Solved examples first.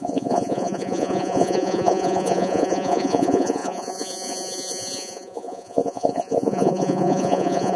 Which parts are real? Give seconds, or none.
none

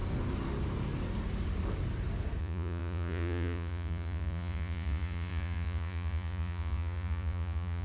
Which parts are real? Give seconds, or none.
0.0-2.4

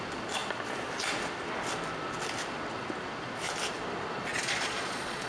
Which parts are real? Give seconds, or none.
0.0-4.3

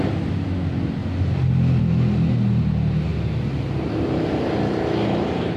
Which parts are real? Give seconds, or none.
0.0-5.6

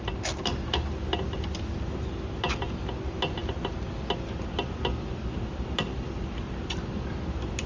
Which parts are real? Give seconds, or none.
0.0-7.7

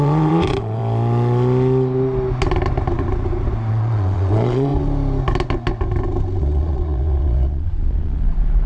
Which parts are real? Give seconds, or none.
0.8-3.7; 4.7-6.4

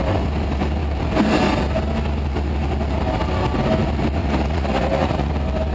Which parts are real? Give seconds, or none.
0.0-4.2; 5.3-5.7

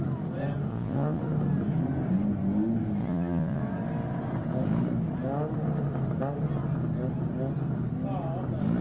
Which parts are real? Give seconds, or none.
0.0-0.7; 1.2-3.0; 3.6-8.8